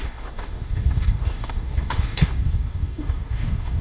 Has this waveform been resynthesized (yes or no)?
yes